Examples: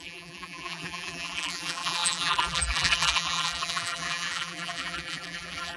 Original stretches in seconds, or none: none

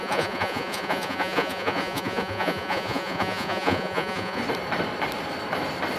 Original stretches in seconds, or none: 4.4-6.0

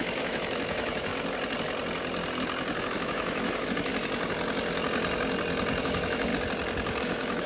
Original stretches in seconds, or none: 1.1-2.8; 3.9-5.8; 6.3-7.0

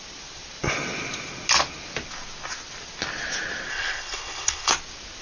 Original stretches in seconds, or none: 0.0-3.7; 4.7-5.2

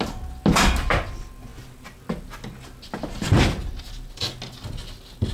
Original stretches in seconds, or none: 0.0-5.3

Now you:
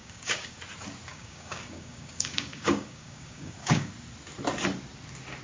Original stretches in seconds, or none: 0.6-1.1; 3.9-5.4